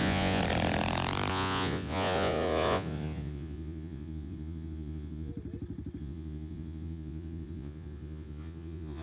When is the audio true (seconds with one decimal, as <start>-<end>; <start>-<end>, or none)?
0.4-1.3; 5.3-6.0